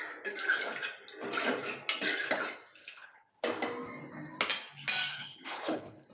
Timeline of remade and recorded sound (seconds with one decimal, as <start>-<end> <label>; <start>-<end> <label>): 0.0-2.8 recorded; 2.8-3.3 remade; 3.3-5.1 recorded; 5.1-6.1 remade